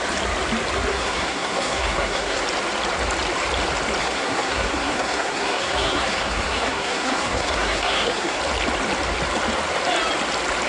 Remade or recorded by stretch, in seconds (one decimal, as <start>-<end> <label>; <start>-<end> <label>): 0.0-0.9 recorded; 0.9-2.4 remade; 2.4-4.0 recorded; 4.0-8.4 remade; 8.4-10.7 recorded